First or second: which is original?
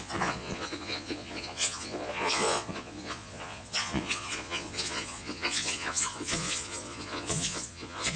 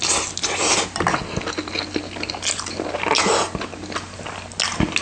second